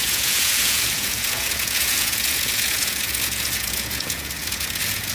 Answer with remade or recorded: remade